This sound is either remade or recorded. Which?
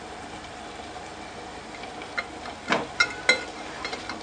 recorded